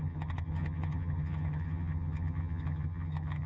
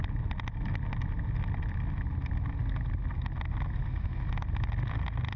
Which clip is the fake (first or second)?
first